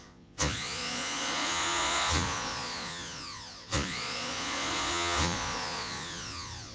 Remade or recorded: remade